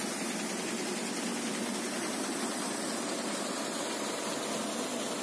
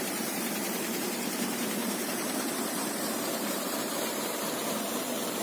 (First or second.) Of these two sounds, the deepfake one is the second